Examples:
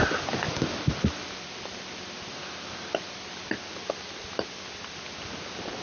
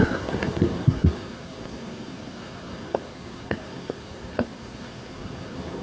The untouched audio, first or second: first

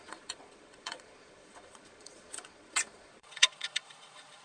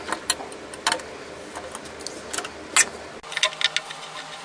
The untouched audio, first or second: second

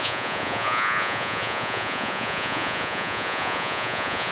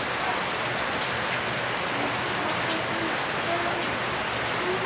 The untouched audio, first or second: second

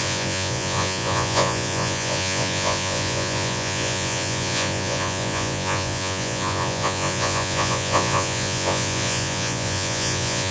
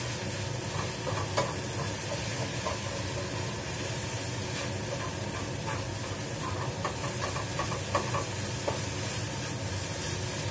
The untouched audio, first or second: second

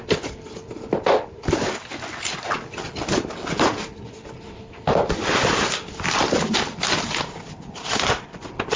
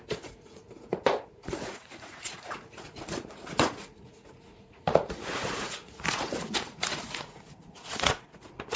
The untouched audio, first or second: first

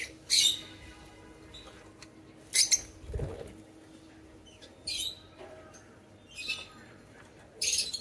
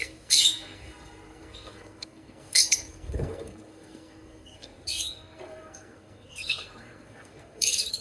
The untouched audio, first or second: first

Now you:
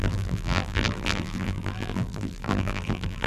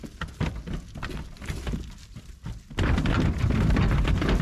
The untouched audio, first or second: second